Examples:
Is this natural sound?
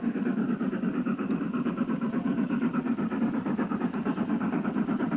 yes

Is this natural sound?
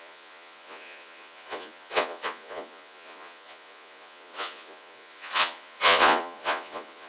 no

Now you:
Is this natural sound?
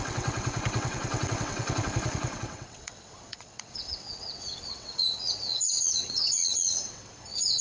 no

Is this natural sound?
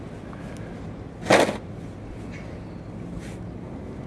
yes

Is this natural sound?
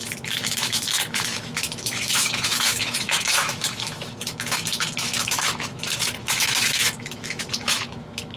no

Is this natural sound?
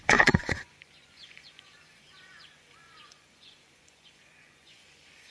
no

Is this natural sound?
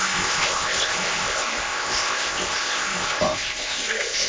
no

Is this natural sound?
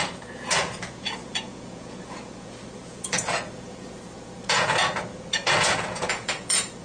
no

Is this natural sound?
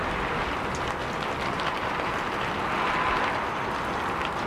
yes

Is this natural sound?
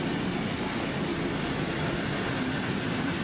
yes